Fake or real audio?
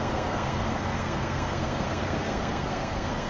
fake